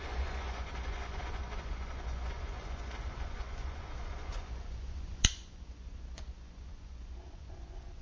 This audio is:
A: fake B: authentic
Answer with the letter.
A